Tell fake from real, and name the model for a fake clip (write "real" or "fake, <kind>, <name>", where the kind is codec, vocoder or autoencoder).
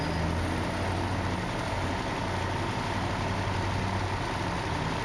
real